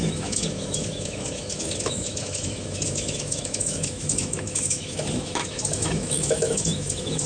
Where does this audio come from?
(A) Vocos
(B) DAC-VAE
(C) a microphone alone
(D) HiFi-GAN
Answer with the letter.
B